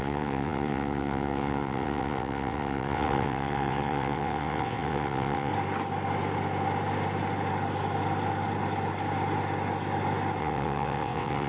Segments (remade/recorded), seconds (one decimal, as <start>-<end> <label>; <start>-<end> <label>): 0.0-5.5 remade; 5.5-10.4 recorded; 10.4-11.5 remade